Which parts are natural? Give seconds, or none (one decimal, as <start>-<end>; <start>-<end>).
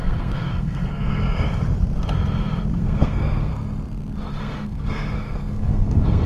1.2-2.7; 3.5-4.4